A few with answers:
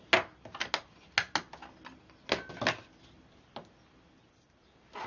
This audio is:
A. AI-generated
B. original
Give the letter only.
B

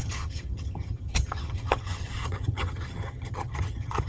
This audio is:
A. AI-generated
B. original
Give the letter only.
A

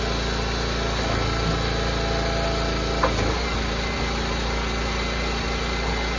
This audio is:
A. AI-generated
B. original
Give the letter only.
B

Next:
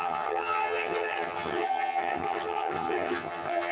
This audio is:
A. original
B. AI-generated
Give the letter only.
B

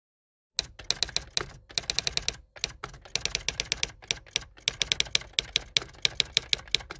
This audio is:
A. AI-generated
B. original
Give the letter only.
B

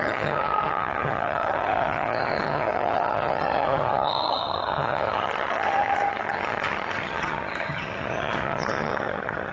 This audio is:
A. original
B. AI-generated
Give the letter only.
B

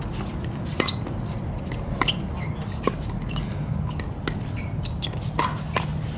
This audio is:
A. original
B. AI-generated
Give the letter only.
A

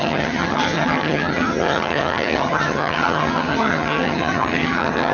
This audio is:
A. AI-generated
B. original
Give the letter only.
A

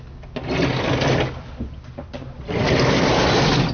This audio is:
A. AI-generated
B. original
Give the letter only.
B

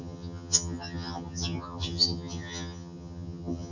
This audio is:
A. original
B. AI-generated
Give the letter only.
B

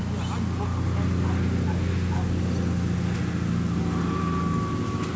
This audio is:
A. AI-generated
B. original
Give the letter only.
B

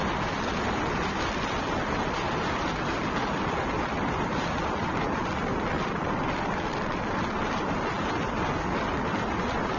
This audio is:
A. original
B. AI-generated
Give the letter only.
A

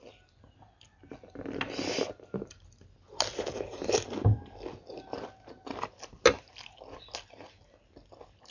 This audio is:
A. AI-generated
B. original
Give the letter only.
B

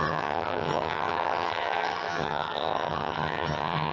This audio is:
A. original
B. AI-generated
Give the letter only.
B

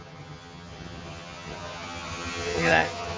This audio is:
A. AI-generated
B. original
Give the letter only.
A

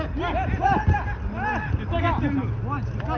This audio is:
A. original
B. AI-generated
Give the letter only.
A